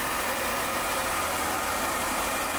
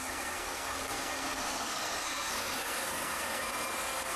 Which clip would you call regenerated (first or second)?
second